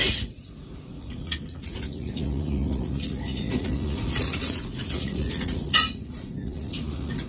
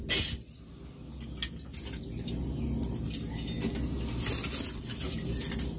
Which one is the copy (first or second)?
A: first